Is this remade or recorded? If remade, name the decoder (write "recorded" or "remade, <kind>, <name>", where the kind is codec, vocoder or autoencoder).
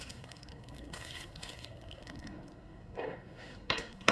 remade, codec, SNAC